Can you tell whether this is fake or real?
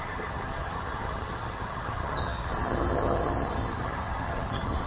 fake